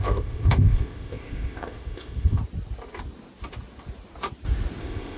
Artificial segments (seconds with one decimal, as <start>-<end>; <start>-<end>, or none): 0.0-2.4; 4.8-5.2